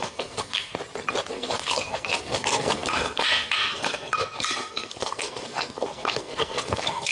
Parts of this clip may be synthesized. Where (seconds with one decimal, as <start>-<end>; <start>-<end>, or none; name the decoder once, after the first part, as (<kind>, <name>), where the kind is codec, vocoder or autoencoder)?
0.0-0.7 (codec, SNAC); 1.3-7.1